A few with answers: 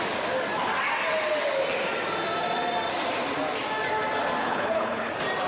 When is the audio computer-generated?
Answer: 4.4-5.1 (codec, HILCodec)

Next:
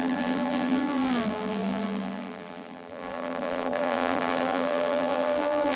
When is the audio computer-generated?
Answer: 0.0-5.8 (vocoder, BigVGAN v2)

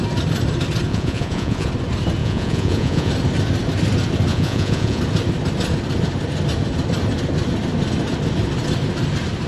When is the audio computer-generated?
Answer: 0.9-1.7 (vocoder, Vocos); 2.2-3.1; 4.3-5.0

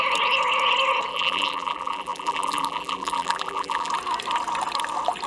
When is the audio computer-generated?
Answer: 1.1-3.9 (vocoder, BigVGAN v2)

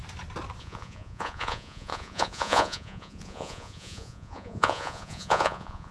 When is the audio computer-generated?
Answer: 0.6-5.9 (vocoder, Vocos)

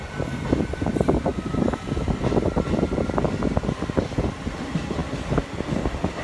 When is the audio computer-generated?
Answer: 0.0-1.3 (vocoder, BigVGAN v2); 4.0-6.2

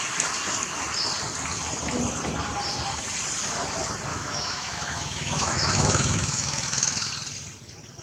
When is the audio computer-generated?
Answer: 4.1-7.1 (autoencoder, DAC-VAE)